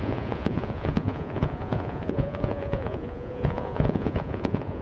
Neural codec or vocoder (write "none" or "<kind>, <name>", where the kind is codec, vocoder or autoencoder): vocoder, Vocos